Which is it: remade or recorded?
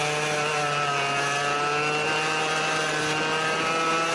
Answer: recorded